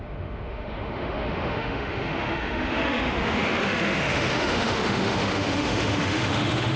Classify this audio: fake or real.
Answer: fake